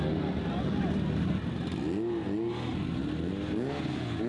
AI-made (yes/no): no